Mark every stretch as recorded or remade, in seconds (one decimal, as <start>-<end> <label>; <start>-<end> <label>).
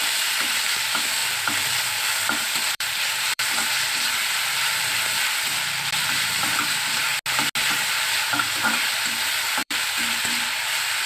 0.0-7.1 remade; 7.1-8.7 recorded; 8.7-11.1 remade